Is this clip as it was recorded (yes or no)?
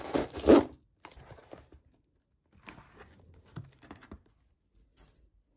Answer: yes